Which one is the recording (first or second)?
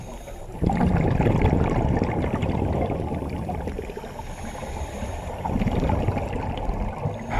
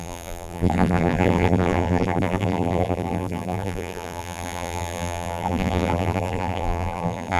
first